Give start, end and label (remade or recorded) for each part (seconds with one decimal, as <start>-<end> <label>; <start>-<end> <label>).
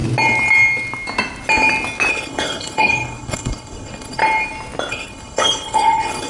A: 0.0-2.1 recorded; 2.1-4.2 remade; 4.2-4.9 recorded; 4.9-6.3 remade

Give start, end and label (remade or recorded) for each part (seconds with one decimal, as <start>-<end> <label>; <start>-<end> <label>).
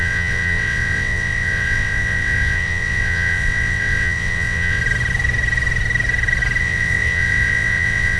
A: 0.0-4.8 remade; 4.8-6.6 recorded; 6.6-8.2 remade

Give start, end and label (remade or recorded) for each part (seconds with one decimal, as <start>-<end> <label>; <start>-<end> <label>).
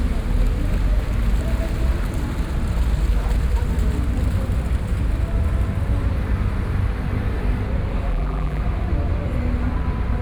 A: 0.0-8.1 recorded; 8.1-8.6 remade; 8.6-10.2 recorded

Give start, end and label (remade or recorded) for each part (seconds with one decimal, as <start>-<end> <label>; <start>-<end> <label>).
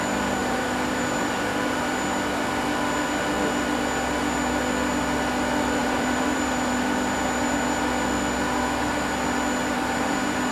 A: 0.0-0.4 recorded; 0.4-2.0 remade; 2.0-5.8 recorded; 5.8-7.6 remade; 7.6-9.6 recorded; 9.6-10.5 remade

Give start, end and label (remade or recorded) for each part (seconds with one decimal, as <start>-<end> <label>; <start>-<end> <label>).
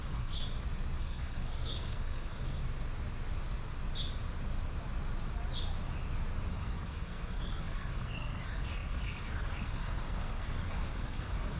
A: 0.0-0.4 remade; 0.4-1.0 recorded; 1.0-2.6 remade; 2.6-6.5 recorded; 6.5-11.6 remade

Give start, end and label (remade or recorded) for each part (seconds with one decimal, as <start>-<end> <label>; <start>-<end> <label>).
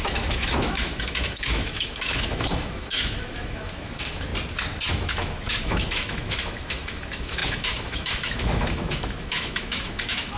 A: 0.0-4.3 remade; 4.3-4.9 recorded; 4.9-10.4 remade